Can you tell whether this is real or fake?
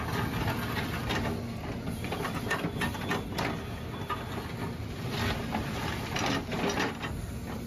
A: real